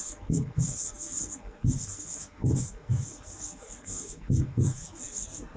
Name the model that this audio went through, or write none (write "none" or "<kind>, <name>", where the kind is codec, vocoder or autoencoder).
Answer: codec, SNAC